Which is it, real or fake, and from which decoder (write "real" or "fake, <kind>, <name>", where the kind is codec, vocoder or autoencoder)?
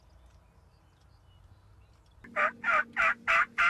real